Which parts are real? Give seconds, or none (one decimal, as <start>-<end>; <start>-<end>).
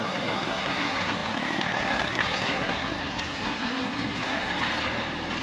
4.5-5.4